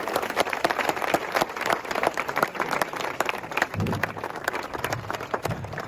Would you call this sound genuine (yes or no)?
no